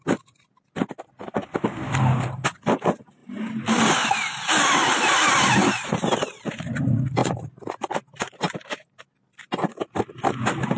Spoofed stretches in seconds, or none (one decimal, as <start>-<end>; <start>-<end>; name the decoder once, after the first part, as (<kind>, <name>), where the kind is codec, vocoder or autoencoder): none